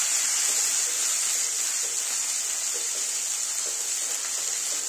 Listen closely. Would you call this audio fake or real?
real